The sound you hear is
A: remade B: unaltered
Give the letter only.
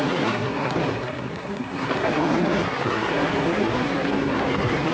A